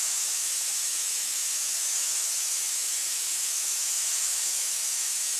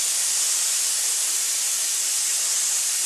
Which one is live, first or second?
second